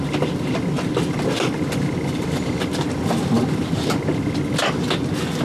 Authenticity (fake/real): real